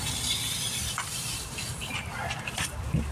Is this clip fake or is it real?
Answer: fake